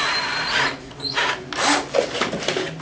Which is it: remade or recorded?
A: recorded